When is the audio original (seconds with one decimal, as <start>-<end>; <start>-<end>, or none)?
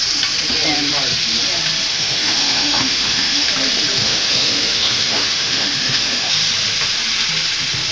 0.0-1.9; 3.5-4.0; 6.3-7.9